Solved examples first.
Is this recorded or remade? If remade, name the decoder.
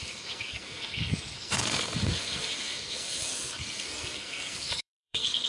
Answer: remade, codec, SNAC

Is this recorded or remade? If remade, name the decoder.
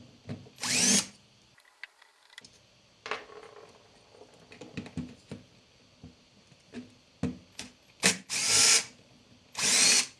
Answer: recorded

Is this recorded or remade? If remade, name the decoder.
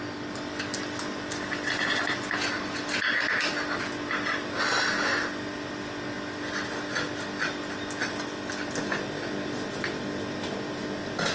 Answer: recorded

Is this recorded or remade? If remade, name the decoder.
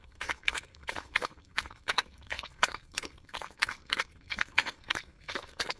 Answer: remade, codec, SNAC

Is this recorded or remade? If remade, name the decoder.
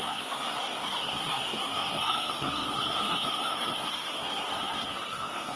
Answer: remade, codec, SNAC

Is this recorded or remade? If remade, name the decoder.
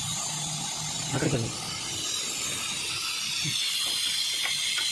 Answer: recorded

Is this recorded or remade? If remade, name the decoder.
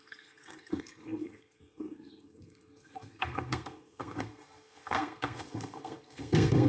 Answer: remade, codec, SNAC